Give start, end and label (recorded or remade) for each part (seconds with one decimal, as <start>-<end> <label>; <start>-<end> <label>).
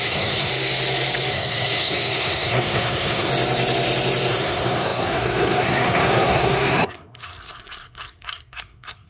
0.0-0.5 remade; 0.5-1.3 recorded; 1.3-3.3 remade; 3.3-4.3 recorded; 4.3-9.1 remade